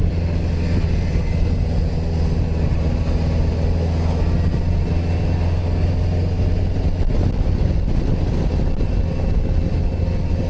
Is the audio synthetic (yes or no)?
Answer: no